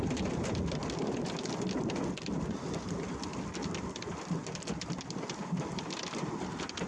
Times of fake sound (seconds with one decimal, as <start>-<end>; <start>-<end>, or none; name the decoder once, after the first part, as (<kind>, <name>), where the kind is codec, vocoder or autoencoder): none